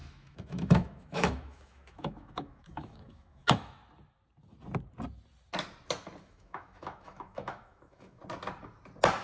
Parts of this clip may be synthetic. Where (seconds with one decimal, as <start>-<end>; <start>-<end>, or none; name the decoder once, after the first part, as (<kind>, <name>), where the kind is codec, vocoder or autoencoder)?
0.0-3.8 (autoencoder, DAC-VAE); 6.2-8.2